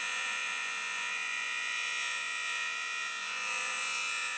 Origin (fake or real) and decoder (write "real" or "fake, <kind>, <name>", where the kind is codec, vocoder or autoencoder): fake, vocoder, Vocos